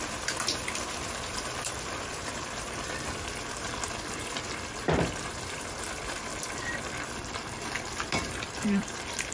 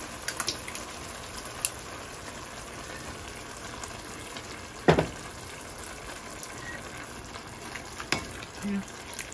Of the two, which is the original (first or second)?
second